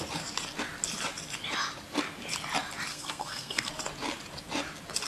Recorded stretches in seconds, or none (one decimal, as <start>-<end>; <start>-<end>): 0.0-2.9; 3.7-5.1